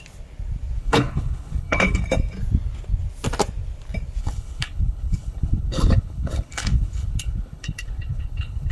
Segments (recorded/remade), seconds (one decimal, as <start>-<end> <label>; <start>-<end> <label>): 0.0-0.8 recorded; 0.8-2.0 remade; 2.0-4.2 recorded; 4.2-8.7 remade